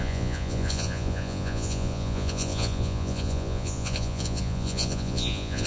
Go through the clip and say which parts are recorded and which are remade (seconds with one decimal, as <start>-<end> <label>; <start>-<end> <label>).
0.0-5.7 remade